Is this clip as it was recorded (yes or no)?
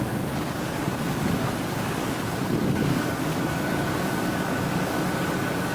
no